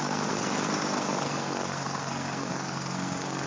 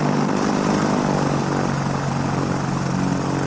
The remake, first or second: first